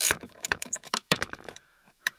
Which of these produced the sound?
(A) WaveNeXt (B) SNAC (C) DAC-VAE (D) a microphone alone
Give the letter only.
C